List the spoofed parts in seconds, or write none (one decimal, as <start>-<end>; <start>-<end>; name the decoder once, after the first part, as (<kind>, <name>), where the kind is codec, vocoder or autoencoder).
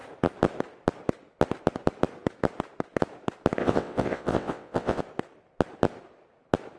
3.6-5.0 (vocoder, WaveNeXt)